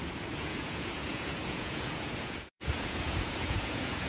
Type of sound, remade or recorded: remade